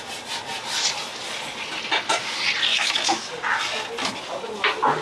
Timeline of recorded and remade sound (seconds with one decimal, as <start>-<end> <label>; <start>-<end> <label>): 0.0-2.7 recorded; 2.7-3.3 remade; 3.3-5.0 recorded